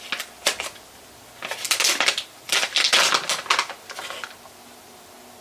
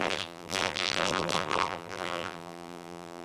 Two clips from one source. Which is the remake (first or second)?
second